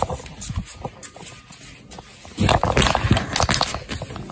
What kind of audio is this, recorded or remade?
recorded